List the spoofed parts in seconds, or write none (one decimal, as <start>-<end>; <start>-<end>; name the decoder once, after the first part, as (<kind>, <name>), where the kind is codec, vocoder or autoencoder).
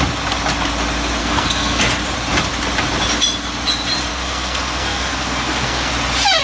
1.2-1.8 (codec, SNAC); 4.1-5.9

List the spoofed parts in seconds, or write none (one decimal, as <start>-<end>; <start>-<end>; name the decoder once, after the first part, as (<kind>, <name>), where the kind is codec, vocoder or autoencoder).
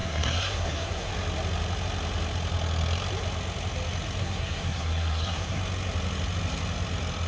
0.0-1.1 (codec, SNAC); 4.2-5.6